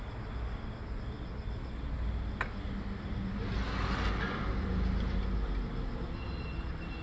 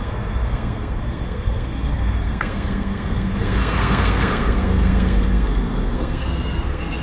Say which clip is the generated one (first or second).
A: second